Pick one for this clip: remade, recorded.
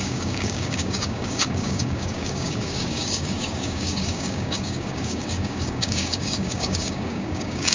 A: remade